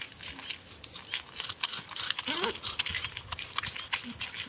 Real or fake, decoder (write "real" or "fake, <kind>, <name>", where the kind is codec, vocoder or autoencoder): real